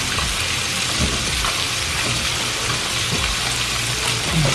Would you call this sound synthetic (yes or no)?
no